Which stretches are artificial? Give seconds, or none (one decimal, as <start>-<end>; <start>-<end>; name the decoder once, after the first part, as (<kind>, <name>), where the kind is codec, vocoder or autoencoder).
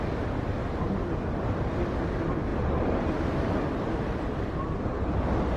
none